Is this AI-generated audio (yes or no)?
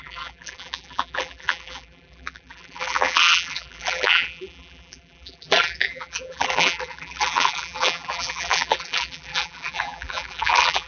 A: yes